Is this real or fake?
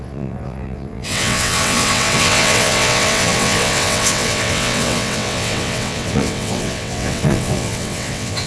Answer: fake